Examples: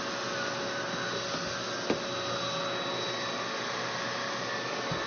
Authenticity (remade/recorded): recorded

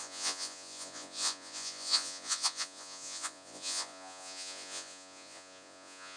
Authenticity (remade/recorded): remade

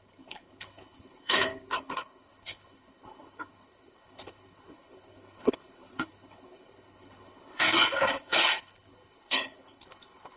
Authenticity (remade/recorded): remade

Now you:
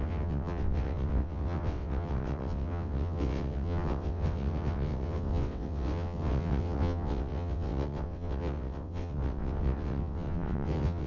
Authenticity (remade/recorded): remade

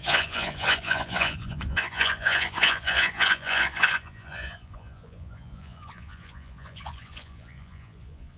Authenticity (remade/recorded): remade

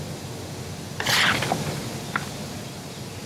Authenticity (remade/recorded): recorded